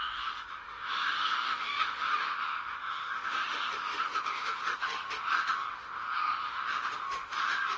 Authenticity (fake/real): fake